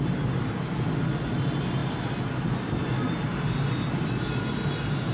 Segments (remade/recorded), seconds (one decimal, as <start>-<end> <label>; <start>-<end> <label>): 0.0-5.1 recorded

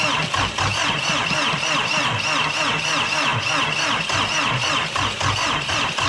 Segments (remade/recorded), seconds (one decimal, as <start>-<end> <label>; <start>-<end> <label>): 0.0-6.1 recorded

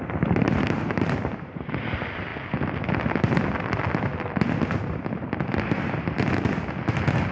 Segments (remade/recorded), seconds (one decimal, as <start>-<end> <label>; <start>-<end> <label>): 0.0-0.4 recorded; 0.4-1.7 remade; 1.7-7.3 recorded

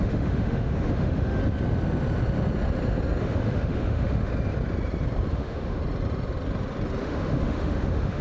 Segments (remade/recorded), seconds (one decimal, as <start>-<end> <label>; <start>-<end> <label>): 0.0-1.4 remade; 1.4-3.2 recorded; 3.2-4.3 remade; 4.3-5.3 recorded; 5.3-5.8 remade; 5.8-7.0 recorded; 7.0-8.2 remade

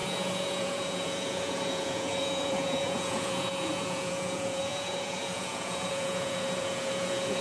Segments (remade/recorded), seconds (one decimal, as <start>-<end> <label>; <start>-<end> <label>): 0.0-7.4 remade

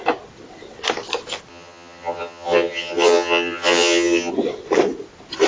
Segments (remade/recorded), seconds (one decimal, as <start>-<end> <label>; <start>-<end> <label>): 0.0-1.5 recorded; 1.5-4.3 remade; 4.3-5.5 recorded

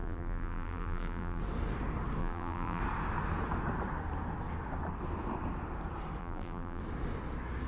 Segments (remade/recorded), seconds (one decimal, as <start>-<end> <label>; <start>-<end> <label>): 0.0-1.4 remade; 1.4-2.2 recorded; 2.2-2.8 remade; 2.8-6.2 recorded; 6.2-6.8 remade; 6.8-7.7 recorded